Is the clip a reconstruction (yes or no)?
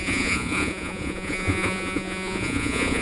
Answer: yes